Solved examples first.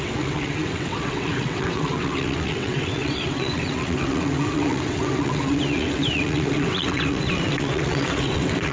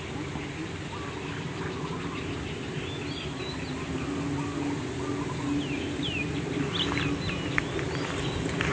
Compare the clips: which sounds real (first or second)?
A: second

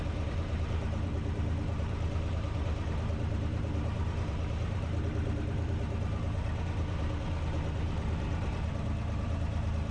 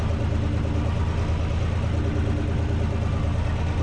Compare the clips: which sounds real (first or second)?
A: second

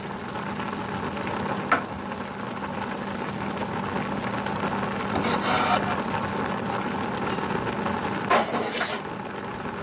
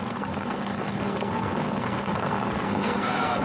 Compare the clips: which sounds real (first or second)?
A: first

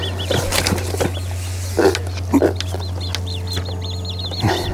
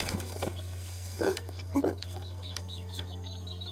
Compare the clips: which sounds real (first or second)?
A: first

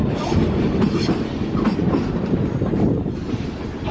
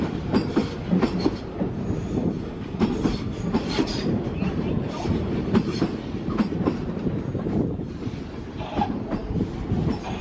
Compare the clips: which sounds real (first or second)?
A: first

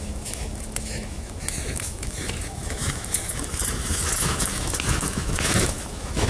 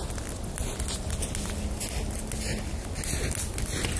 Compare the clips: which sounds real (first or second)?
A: second